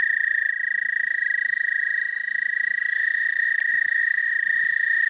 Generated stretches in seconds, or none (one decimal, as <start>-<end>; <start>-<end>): 1.4-2.8; 3.7-4.2